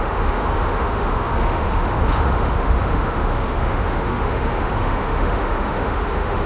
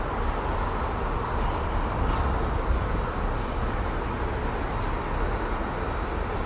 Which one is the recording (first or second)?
second